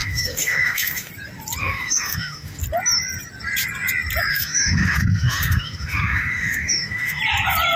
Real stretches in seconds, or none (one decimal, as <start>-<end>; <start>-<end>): 1.1-1.6; 2.6-4.3; 7.2-7.8